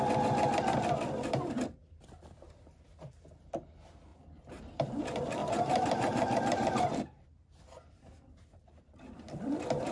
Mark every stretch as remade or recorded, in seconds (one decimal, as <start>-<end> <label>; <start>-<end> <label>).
0.0-4.1 recorded; 4.1-5.0 remade; 5.0-5.4 recorded; 5.4-7.6 remade; 7.6-9.9 recorded